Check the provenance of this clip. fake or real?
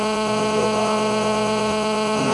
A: fake